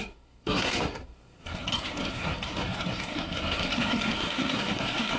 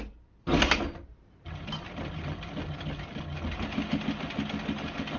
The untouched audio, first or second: second